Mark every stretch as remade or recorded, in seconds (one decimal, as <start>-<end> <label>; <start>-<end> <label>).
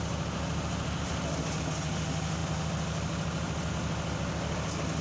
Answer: 0.0-5.0 recorded